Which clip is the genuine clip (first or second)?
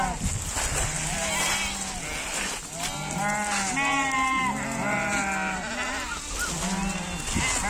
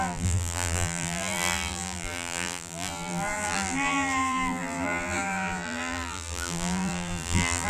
first